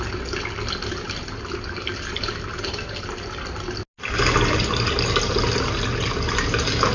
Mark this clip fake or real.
real